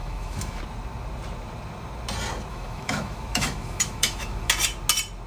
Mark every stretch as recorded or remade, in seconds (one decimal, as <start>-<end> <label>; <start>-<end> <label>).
0.0-0.6 remade; 0.6-2.5 recorded; 2.5-4.5 remade; 4.5-5.3 recorded